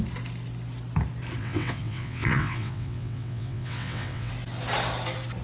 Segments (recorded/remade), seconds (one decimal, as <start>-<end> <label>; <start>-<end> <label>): 0.0-1.4 recorded; 1.4-4.3 remade; 4.3-5.4 recorded